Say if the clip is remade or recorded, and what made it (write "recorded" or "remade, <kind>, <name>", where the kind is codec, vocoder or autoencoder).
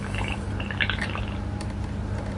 recorded